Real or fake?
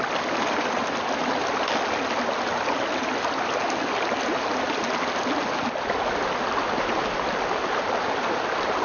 real